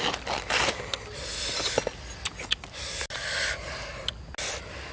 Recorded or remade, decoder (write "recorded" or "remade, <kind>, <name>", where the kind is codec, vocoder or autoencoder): recorded